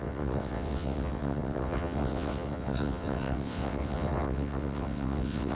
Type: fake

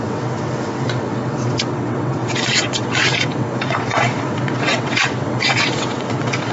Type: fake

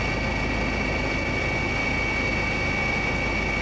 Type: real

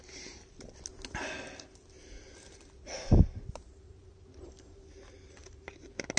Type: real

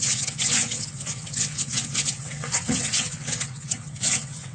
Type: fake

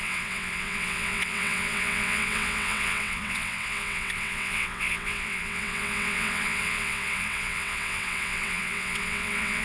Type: fake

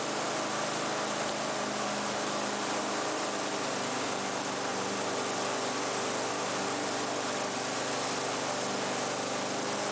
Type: real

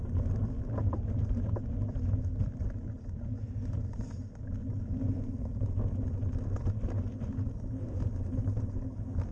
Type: real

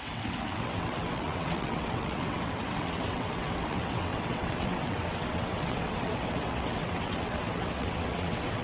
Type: fake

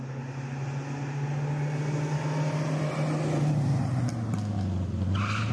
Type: real